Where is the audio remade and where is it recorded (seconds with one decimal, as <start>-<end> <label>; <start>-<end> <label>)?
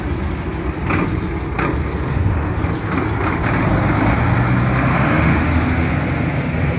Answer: 0.0-2.1 recorded; 2.1-2.6 remade; 2.6-4.9 recorded; 4.9-5.9 remade; 5.9-6.8 recorded